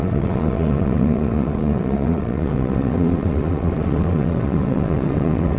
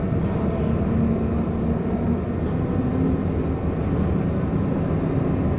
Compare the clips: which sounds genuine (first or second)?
second